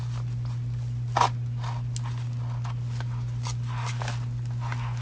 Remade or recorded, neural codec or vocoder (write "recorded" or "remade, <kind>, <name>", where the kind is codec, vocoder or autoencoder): recorded